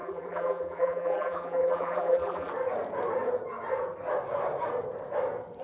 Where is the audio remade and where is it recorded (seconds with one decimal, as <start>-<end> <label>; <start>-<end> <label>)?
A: 0.0-2.5 remade; 2.5-5.6 recorded